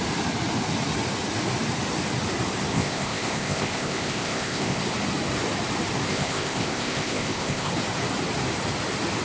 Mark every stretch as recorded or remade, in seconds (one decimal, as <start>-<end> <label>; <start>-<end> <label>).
0.0-2.7 recorded; 2.7-4.8 remade; 4.8-6.1 recorded; 6.1-7.7 remade; 7.7-9.2 recorded